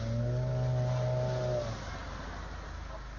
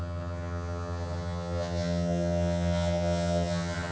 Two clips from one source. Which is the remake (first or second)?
second